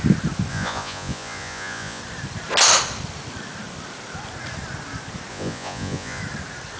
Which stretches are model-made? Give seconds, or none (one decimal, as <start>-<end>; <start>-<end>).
0.5-2.0; 5.3-6.2